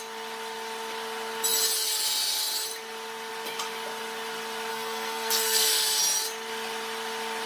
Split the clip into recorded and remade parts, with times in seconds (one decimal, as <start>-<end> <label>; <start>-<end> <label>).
0.0-4.7 recorded; 4.7-6.0 remade; 6.0-7.5 recorded

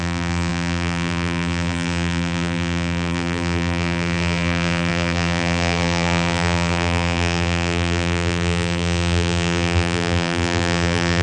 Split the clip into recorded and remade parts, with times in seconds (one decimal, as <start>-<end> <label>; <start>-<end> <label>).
0.0-11.2 remade

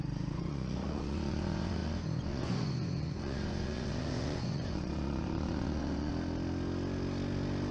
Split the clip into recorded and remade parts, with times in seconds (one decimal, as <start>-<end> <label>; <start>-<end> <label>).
0.0-6.1 remade; 6.1-7.7 recorded

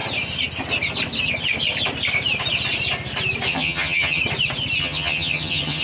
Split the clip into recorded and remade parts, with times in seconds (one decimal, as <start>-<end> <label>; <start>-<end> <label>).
0.0-3.5 recorded; 3.5-4.2 remade; 4.2-4.8 recorded; 4.8-5.8 remade

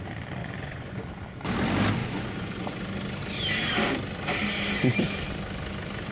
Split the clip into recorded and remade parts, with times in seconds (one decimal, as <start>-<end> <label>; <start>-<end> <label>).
0.0-0.4 recorded; 0.4-1.0 remade; 1.0-2.0 recorded; 2.0-2.8 remade; 2.8-6.1 recorded

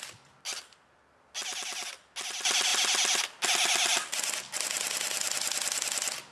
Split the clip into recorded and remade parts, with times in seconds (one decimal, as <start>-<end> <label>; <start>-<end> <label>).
0.0-6.3 recorded

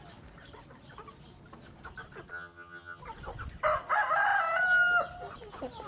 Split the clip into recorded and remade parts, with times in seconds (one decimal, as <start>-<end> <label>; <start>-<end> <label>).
0.0-2.3 recorded; 2.3-3.0 remade; 3.0-5.9 recorded